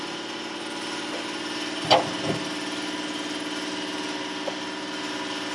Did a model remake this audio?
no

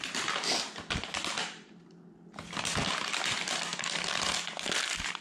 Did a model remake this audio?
no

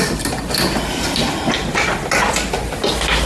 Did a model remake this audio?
no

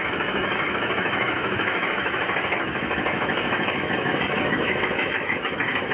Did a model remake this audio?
yes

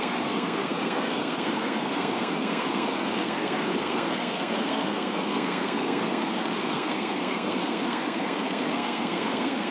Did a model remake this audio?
yes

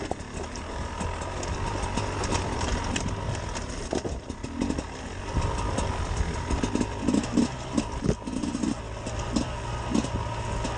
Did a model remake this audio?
no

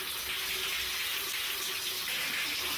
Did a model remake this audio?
no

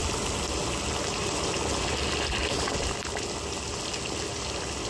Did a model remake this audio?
no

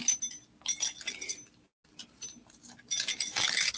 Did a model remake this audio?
no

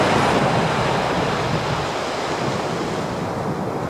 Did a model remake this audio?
no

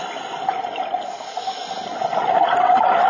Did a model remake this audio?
no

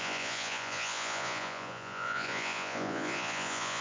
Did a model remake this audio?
yes